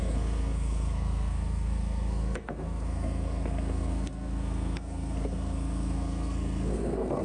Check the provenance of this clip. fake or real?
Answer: fake